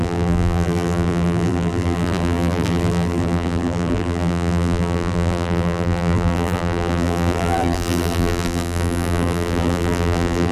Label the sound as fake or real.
fake